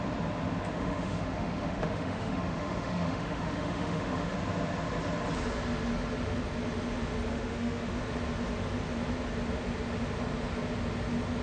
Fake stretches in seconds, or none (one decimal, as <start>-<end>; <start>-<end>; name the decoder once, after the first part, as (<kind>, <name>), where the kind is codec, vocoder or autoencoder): 0.7-4.3 (autoencoder, DAC-VAE); 7.3-8.0